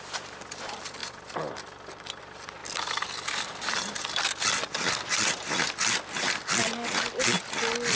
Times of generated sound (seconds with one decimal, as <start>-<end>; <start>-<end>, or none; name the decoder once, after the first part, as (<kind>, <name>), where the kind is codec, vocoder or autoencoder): none

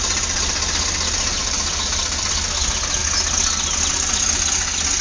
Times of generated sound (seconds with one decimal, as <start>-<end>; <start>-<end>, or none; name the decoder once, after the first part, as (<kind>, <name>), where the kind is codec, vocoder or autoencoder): 1.4-2.3 (vocoder, BigVGAN v2)

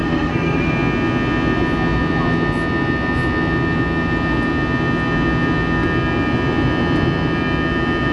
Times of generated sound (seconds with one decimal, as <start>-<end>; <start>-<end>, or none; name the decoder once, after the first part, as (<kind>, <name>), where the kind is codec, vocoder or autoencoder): 0.0-0.7 (codec, SNAC)

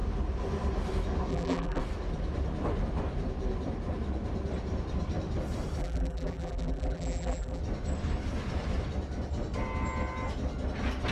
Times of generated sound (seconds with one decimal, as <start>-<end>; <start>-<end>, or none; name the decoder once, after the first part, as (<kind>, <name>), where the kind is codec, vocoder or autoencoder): 1.3-1.8 (vocoder, BigVGAN v2); 5.8-7.6

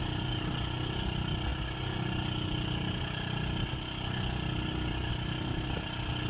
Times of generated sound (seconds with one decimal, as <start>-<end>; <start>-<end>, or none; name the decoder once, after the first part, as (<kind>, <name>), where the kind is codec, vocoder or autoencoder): none

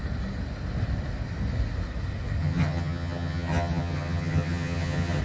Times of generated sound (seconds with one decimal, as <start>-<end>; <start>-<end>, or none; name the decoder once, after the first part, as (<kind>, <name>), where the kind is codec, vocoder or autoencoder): 2.4-5.2 (vocoder, HiFi-GAN)